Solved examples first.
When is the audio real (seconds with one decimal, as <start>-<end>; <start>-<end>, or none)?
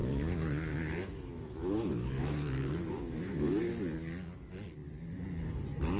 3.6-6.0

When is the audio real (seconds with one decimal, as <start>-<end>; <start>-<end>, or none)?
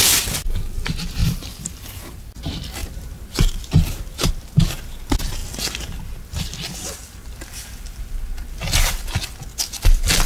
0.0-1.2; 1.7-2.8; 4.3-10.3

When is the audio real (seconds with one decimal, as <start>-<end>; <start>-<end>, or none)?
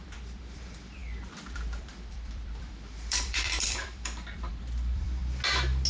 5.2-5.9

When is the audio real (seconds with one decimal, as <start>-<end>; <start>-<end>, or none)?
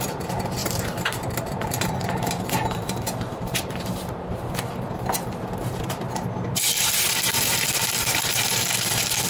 0.0-0.6; 4.5-9.3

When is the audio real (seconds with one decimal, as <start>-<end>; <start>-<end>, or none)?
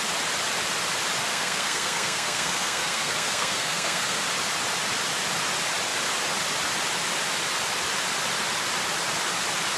0.0-1.3; 4.2-9.8